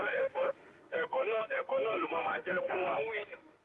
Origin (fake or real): fake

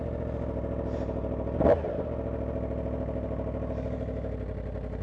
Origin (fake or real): real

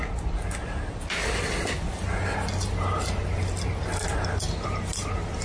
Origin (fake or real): real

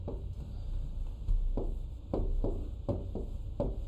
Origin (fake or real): real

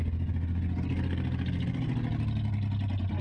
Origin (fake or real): real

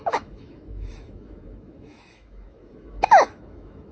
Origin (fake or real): fake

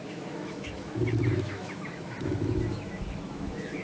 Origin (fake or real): fake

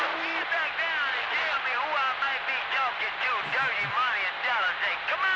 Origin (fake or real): real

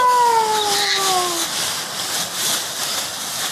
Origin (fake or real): real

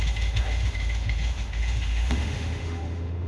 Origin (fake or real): fake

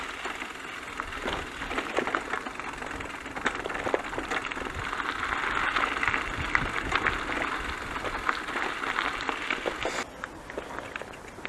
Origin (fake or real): real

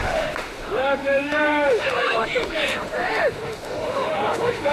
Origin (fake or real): fake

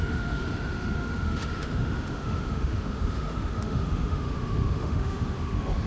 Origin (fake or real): fake